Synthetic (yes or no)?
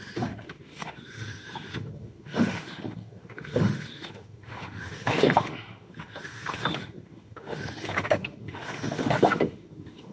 yes